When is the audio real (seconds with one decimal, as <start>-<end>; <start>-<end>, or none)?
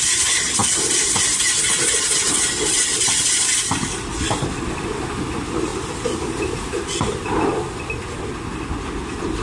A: 0.0-5.7; 6.4-9.4